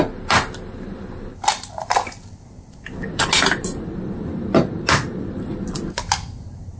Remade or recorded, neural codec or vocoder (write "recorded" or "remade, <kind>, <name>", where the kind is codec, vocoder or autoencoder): recorded